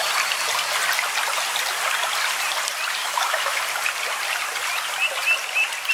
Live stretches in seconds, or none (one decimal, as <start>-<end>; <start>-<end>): 0.0-3.0; 3.6-5.9